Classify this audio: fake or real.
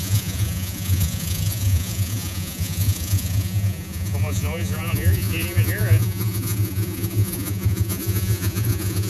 fake